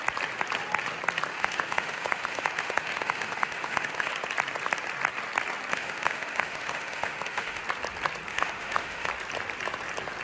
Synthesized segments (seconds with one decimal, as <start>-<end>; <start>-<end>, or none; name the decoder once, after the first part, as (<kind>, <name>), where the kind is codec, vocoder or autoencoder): 1.3-4.1 (autoencoder, DAC-VAE); 5.7-7.6; 8.3-9.1